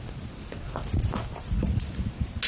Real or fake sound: real